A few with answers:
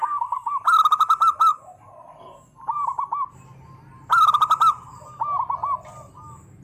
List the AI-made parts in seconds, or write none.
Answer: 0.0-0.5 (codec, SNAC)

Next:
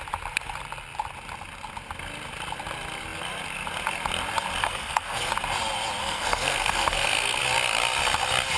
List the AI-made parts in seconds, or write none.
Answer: 4.6-5.3 (codec, SNAC); 6.0-7.4

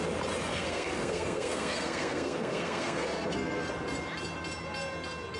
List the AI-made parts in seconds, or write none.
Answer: 0.5-3.7 (codec, SNAC)

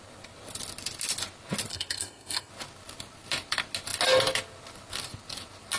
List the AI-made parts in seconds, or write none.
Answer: 1.7-2.5 (codec, SNAC)

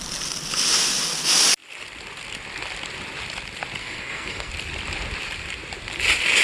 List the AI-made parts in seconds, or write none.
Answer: 3.8-4.5 (codec, SNAC)

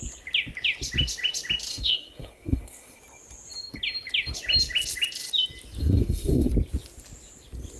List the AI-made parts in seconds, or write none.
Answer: 1.7-3.0 (codec, SNAC); 5.8-6.5

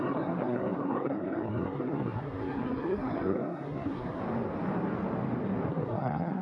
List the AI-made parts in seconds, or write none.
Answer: 0.0-4.2 (codec, SNAC); 5.7-6.4

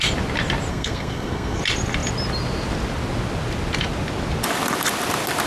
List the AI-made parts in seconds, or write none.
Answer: 0.7-1.6 (codec, SNAC)